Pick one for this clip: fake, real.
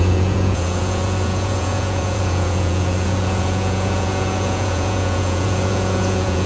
fake